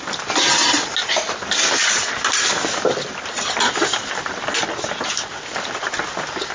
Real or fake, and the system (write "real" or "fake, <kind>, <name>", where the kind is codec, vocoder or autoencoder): real